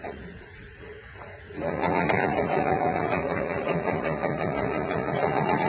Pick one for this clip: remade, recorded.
remade